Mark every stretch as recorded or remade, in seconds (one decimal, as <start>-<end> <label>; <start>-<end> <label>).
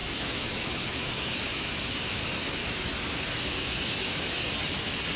0.0-2.2 remade; 2.2-2.6 recorded; 2.6-4.4 remade; 4.4-5.2 recorded